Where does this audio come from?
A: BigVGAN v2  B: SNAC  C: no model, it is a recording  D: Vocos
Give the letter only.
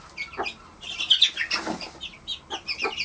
C